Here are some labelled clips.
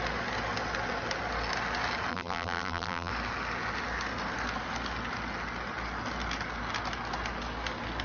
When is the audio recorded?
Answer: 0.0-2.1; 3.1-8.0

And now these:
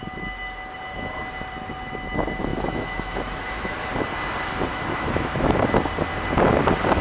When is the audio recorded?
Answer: 0.0-2.5; 3.7-4.7; 5.6-7.0